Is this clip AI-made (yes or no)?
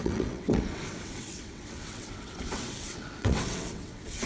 yes